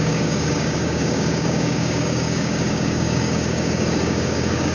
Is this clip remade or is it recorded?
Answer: remade